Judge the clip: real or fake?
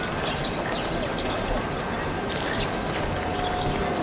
real